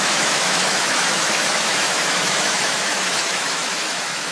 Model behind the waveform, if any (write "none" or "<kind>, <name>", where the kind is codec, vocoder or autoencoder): autoencoder, DAC-VAE